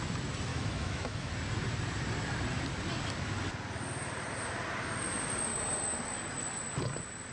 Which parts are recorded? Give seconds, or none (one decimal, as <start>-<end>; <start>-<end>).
0.0-0.5; 1.3-5.5; 6.0-7.3